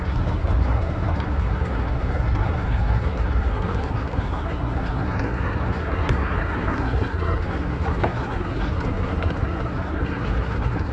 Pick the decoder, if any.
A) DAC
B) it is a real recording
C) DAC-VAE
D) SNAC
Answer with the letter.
D